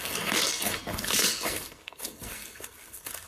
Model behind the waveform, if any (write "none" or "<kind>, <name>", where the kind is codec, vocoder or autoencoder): codec, SNAC